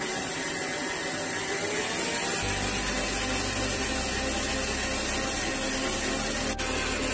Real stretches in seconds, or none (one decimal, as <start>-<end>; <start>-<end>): 0.0-7.1